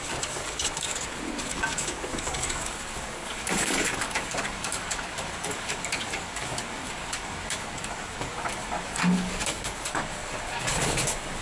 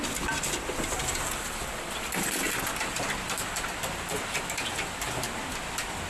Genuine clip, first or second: second